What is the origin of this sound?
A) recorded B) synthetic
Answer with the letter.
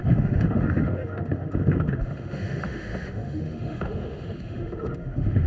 B